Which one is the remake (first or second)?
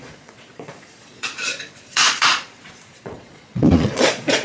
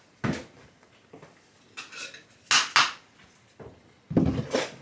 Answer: first